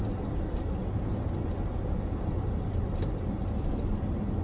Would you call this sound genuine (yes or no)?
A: yes